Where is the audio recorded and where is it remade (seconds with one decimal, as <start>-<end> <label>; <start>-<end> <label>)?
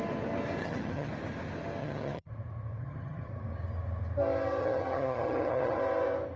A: 0.0-0.6 recorded; 0.6-1.1 remade; 1.1-1.8 recorded; 1.8-2.3 remade; 2.3-2.8 recorded; 2.8-3.3 remade; 3.3-4.6 recorded; 4.6-5.8 remade; 5.8-6.4 recorded